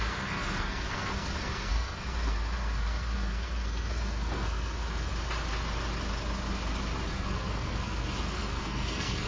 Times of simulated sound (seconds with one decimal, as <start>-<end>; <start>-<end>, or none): 0.0-5.1; 7.1-9.3